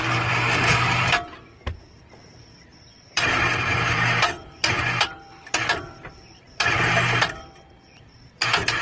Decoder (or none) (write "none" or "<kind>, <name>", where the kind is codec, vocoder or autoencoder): vocoder, BigVGAN v2